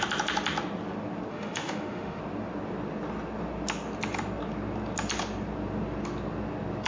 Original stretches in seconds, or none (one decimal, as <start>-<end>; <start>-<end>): 0.0-1.3; 2.2-6.9